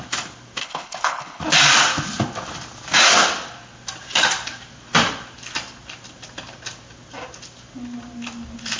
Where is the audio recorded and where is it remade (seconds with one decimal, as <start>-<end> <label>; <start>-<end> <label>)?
0.0-0.6 recorded; 0.6-1.4 remade; 1.4-8.8 recorded